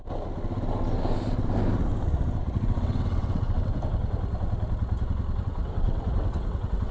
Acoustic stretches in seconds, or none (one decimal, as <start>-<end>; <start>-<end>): 0.0-2.4; 3.7-5.4